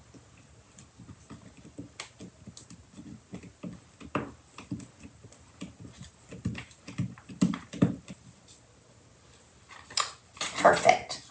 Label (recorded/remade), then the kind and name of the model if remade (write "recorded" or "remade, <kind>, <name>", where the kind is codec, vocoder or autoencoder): recorded